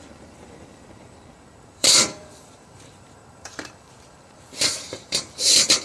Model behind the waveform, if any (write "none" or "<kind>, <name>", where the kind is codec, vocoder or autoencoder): vocoder, BigVGAN v2